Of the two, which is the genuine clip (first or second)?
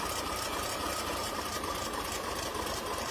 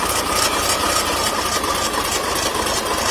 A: second